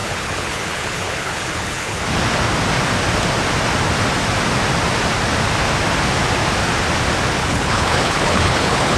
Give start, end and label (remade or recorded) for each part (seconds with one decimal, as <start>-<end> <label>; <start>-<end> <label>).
0.0-2.0 remade; 2.0-7.4 recorded; 7.4-9.0 remade